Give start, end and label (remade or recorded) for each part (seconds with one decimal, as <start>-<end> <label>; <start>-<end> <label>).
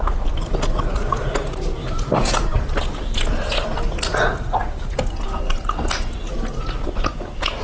0.0-7.6 recorded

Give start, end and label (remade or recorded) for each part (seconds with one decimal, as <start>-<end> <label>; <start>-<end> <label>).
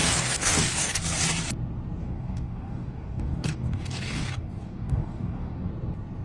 0.0-1.0 remade; 1.0-2.0 recorded; 2.0-5.7 remade; 5.7-6.2 recorded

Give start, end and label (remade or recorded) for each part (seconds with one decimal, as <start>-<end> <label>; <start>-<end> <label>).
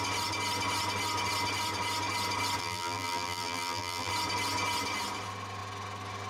0.0-2.6 recorded; 2.6-4.1 remade; 4.1-6.3 recorded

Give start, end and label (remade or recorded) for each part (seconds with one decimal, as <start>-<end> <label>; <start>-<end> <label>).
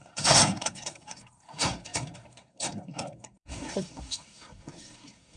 0.0-5.4 remade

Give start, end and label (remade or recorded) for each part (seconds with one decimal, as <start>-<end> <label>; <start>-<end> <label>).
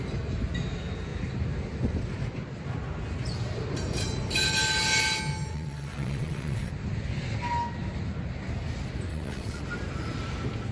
0.0-5.5 recorded; 5.5-6.7 remade; 6.7-9.1 recorded; 9.1-9.6 remade; 9.6-10.7 recorded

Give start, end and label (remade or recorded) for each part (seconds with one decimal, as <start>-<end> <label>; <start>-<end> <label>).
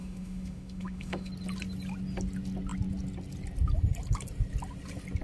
0.0-1.3 remade; 1.3-5.2 recorded